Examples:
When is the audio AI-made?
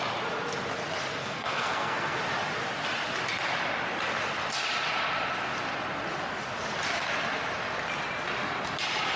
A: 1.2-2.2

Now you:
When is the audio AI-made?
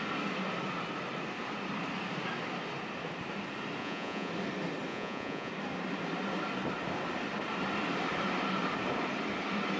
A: 3.8-4.3; 4.9-5.5